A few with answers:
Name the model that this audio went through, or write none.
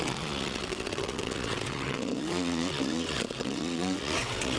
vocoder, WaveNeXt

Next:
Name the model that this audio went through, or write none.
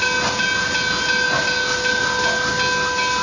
none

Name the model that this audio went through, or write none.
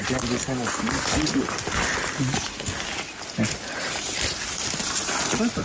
none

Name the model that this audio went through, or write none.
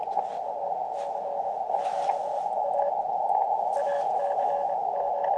none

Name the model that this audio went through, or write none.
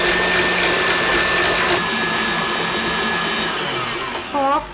none